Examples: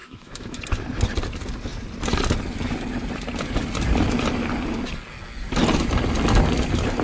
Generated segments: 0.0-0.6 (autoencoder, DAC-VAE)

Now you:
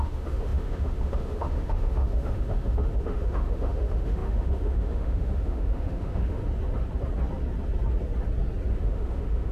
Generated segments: 0.0-6.4 (autoencoder, DAC-VAE); 8.7-9.5

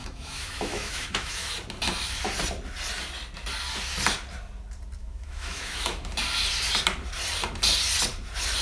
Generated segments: 0.0-1.5 (autoencoder, DAC-VAE); 5.0-6.1

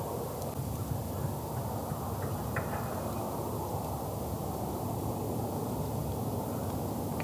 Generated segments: none